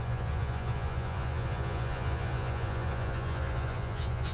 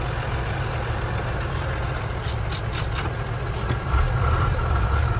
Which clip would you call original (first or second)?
second